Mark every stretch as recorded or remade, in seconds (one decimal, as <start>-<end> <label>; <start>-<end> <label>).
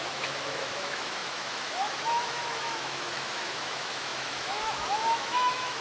0.0-5.8 remade